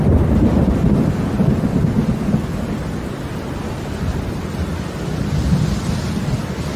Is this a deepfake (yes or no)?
no